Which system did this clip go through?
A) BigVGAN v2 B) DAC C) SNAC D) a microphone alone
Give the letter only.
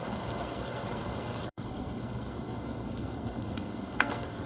C